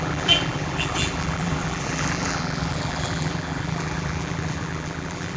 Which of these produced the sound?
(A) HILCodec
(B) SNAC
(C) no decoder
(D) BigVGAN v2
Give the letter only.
D